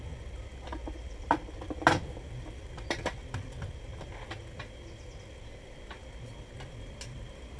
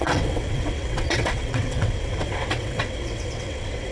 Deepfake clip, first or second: second